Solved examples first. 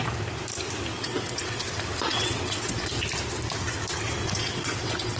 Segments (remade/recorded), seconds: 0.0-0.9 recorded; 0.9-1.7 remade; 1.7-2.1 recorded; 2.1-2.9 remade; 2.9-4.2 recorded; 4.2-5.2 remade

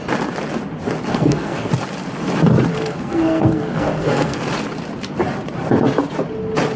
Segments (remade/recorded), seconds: 0.0-1.1 recorded; 1.1-1.7 remade; 1.7-2.7 recorded; 2.7-4.4 remade; 4.4-6.8 recorded

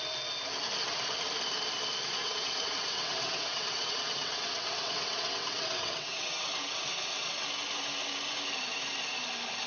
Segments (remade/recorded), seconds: 0.0-2.2 recorded; 2.2-6.5 remade; 6.5-9.7 recorded

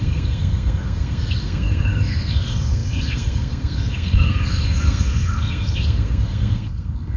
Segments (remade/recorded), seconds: 0.0-7.2 remade

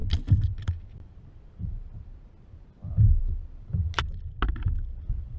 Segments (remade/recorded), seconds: 0.0-5.4 recorded

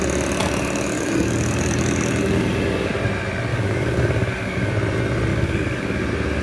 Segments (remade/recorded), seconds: 0.0-0.4 recorded; 0.4-2.9 remade; 2.9-3.5 recorded; 3.5-4.7 remade; 4.7-5.3 recorded; 5.3-6.0 remade; 6.0-6.4 recorded

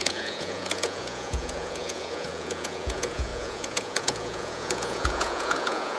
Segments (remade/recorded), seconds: 0.0-6.0 remade